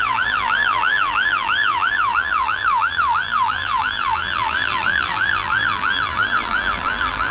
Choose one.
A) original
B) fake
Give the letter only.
B